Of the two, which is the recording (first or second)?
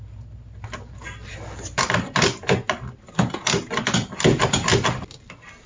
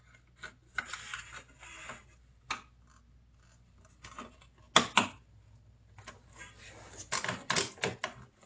second